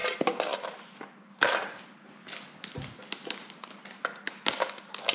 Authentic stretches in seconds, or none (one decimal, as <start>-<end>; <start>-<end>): 0.0-5.1